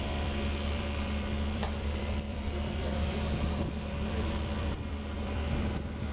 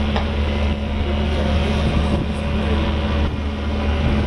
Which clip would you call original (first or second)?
second